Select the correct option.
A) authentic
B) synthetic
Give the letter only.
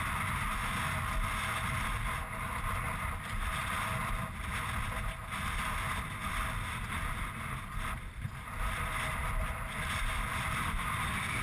A